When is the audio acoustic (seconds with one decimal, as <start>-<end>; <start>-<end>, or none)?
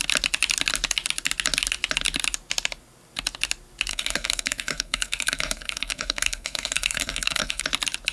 0.0-3.9; 7.6-8.1